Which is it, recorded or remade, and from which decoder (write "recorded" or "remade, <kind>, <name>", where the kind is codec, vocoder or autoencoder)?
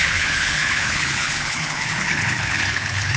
remade, codec, HILCodec